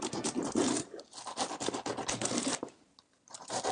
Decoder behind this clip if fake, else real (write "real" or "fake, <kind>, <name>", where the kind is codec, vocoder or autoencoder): real